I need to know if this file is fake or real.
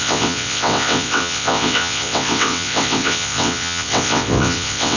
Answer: fake